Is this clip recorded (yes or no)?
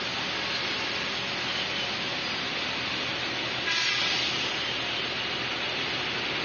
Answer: yes